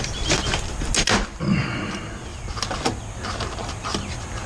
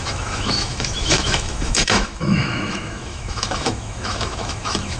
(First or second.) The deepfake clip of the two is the second